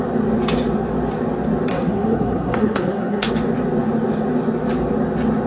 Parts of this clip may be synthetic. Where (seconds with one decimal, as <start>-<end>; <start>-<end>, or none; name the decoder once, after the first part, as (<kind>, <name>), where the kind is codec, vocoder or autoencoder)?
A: 1.7-3.3 (codec, SNAC)